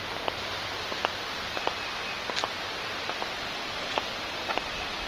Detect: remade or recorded recorded